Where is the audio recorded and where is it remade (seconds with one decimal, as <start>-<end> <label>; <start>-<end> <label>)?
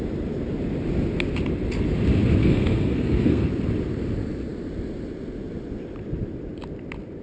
0.0-2.4 recorded; 2.4-3.5 remade; 3.5-7.2 recorded